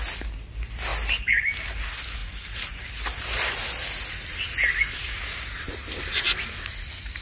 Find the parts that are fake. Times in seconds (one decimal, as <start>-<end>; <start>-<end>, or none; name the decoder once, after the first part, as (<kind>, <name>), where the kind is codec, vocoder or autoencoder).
2.2-6.0 (vocoder, BigVGAN v2)